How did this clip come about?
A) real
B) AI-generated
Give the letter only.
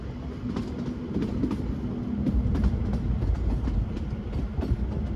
A